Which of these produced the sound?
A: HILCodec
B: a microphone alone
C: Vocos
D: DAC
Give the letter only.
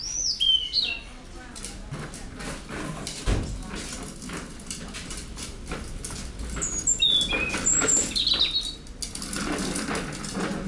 B